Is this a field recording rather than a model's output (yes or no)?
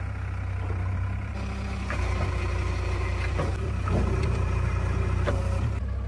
yes